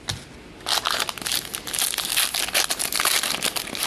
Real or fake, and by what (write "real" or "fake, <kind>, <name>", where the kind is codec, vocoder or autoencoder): real